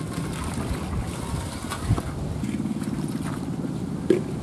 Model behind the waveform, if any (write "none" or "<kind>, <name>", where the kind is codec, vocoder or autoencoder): none